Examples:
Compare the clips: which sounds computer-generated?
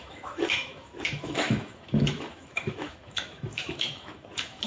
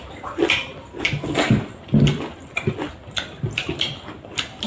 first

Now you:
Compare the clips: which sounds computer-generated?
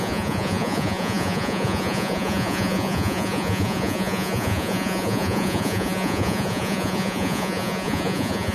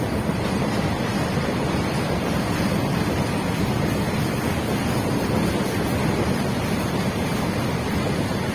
first